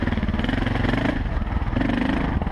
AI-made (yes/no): no